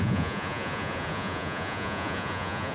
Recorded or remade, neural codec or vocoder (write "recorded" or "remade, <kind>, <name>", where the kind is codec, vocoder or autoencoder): remade, vocoder, Vocos